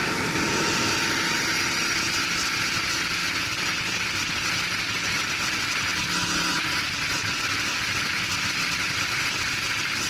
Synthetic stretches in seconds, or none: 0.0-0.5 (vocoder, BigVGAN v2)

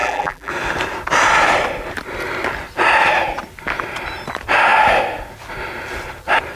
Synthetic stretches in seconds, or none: 0.0-0.5 (vocoder, BigVGAN v2)

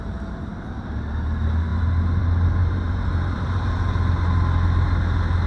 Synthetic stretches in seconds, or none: 2.6-3.7 (vocoder, BigVGAN v2)

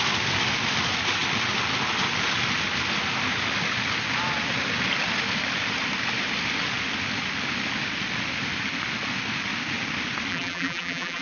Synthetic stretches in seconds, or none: 10.3-11.2 (vocoder, BigVGAN v2)

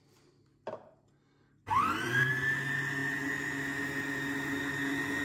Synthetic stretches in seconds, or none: 1.6-2.3 (vocoder, BigVGAN v2)

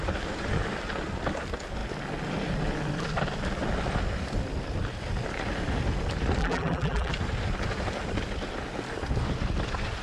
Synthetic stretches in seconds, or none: 6.4-7.1 (vocoder, BigVGAN v2)

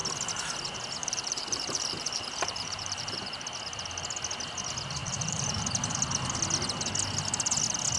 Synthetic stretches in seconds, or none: 1.0-3.4 (vocoder, BigVGAN v2); 5.0-5.6